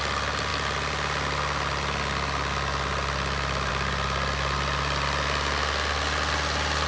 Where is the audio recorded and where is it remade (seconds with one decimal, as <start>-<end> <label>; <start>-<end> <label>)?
0.0-6.9 recorded